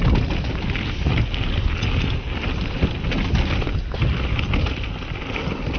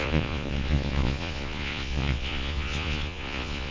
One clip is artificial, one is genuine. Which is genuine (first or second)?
first